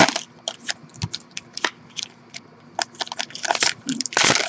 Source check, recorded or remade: recorded